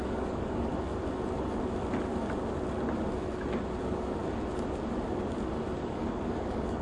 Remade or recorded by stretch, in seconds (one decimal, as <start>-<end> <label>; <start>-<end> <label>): 0.0-0.7 remade; 0.7-3.8 recorded; 3.8-4.2 remade; 4.2-5.9 recorded; 5.9-6.8 remade